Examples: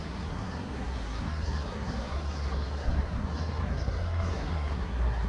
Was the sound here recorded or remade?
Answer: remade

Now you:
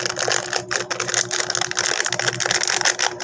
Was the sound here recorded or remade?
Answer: recorded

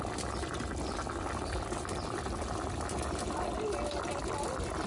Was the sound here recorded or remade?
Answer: recorded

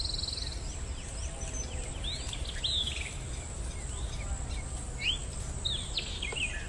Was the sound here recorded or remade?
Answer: recorded